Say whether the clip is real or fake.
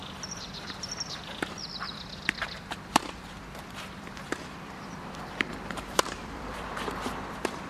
fake